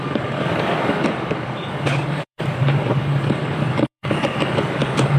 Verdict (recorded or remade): remade